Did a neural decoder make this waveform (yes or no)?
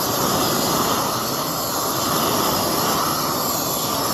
no